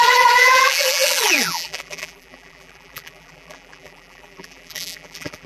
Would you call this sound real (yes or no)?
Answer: no